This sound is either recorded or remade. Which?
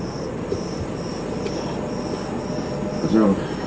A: recorded